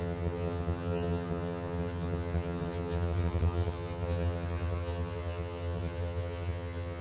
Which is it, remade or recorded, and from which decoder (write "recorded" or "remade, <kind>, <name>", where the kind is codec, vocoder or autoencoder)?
remade, vocoder, HiFi-GAN